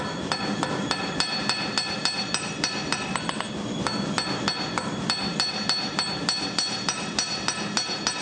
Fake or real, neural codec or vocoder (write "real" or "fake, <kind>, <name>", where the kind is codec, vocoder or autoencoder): real